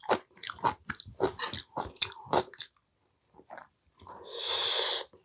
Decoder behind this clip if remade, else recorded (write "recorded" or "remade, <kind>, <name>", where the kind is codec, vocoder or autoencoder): remade, vocoder, BigVGAN v2